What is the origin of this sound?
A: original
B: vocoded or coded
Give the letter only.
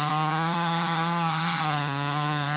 B